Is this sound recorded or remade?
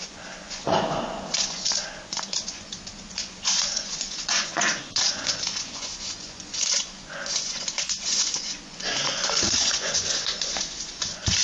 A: remade